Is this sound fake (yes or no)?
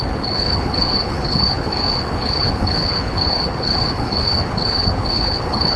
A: yes